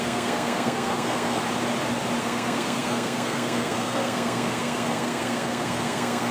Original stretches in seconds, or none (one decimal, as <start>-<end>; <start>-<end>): 1.4-2.2